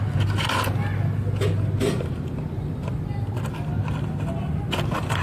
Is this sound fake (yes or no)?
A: no